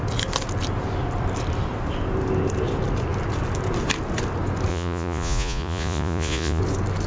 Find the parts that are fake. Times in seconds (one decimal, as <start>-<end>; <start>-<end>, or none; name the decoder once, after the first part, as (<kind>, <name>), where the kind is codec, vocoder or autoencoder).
4.7-6.6 (vocoder, Vocos)